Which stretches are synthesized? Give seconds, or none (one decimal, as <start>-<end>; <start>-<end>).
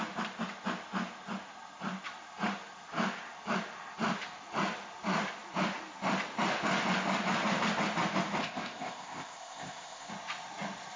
8.4-10.1